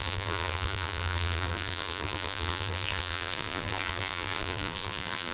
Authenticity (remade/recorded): remade